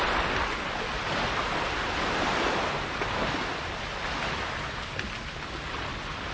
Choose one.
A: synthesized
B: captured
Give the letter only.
B